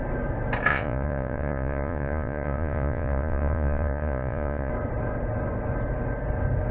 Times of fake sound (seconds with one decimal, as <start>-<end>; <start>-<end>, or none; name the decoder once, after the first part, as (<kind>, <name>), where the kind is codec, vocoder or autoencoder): 0.7-4.7 (vocoder, Vocos)